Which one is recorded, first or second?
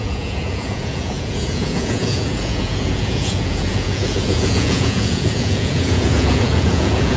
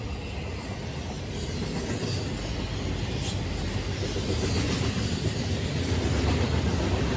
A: second